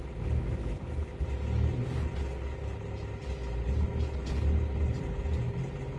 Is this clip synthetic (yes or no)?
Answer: no